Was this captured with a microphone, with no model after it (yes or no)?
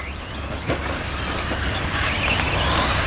yes